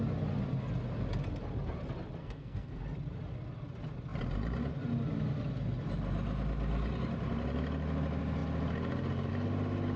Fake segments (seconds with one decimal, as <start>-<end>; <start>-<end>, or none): 2.2-2.8